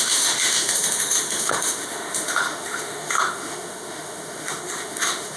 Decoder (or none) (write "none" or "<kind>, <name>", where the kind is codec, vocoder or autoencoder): autoencoder, DAC-VAE